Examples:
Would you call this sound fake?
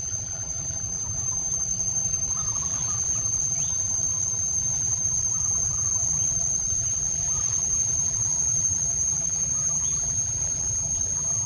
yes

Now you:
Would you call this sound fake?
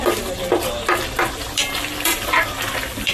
no